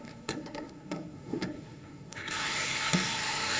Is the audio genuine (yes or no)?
no